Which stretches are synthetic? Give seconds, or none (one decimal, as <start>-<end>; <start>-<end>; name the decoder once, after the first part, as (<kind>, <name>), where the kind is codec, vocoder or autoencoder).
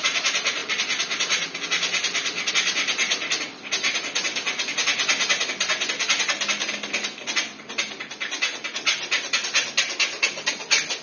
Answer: none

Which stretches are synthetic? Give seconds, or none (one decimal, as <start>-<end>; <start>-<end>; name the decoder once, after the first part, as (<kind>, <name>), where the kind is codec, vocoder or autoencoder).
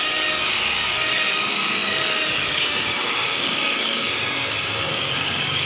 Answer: 0.0-5.7 (codec, DAC)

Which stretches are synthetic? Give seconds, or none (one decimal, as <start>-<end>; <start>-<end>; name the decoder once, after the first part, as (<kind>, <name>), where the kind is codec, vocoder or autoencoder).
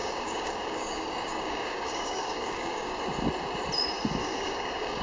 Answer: 0.0-3.0 (codec, DAC); 4.2-5.0